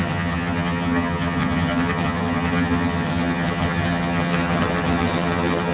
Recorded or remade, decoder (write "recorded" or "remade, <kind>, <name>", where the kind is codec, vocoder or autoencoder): remade, vocoder, HiFi-GAN